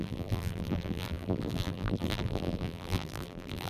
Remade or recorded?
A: remade